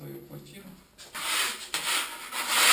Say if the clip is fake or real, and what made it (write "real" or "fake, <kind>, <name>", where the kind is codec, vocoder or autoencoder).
real